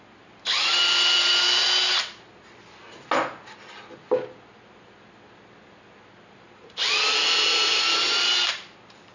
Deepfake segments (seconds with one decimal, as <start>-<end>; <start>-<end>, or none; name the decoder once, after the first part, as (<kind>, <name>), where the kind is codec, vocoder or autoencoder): none